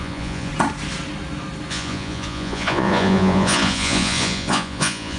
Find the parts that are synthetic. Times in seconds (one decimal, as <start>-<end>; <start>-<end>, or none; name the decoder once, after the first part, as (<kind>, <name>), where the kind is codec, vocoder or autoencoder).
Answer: 0.0-0.5 (vocoder, Vocos); 1.7-5.2